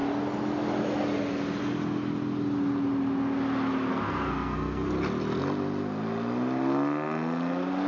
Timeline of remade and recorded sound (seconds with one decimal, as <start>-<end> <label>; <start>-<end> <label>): 0.0-3.9 recorded; 3.9-4.9 remade; 4.9-7.9 recorded